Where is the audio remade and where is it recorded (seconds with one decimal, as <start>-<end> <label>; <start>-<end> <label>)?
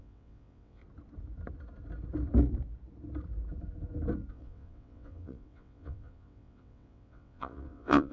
0.0-0.8 remade; 0.8-4.3 recorded; 4.3-8.1 remade